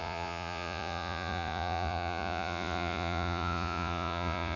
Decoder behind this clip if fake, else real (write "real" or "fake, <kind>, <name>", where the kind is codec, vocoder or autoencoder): fake, vocoder, Vocos